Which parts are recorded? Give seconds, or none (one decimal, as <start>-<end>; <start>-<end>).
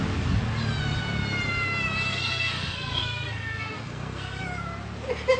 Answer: 0.0-2.1; 4.4-5.4